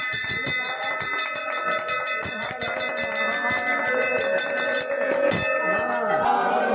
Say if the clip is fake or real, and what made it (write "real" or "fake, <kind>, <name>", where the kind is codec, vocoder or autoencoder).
real